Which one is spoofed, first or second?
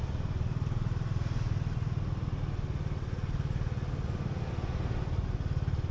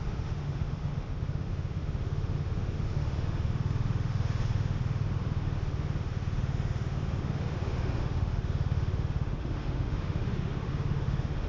second